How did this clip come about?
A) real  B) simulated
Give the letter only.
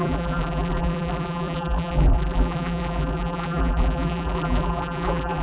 B